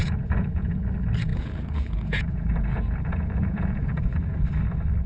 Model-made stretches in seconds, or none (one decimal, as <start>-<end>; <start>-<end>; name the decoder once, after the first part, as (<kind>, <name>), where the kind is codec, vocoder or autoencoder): 0.0-0.8 (vocoder, Vocos); 1.3-4.4